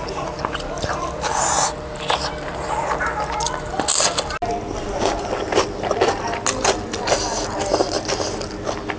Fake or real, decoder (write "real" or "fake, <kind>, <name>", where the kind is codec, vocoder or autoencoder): real